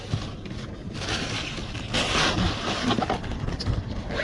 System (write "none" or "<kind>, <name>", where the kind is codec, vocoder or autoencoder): none